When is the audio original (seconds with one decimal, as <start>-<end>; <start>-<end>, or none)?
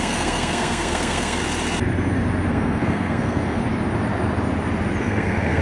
1.4-2.5; 3.6-5.0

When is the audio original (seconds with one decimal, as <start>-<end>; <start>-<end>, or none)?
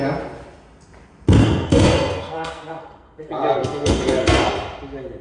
0.0-1.4; 4.5-5.2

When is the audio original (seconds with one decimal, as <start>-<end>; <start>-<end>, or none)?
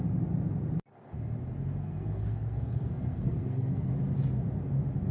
0.0-1.8; 3.9-5.1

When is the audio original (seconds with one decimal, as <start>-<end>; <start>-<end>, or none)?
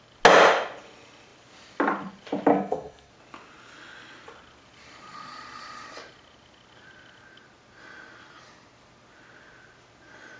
0.0-2.5; 3.1-10.4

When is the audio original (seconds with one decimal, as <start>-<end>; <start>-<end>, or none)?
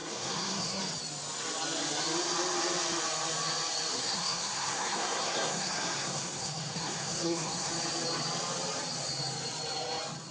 0.8-3.9; 7.7-10.3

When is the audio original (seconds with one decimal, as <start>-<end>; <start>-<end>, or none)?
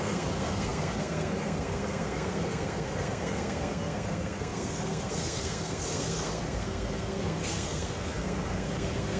none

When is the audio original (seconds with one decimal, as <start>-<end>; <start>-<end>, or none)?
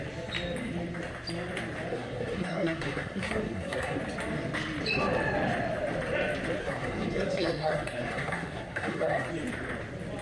0.0-1.9; 4.0-6.6; 9.3-10.2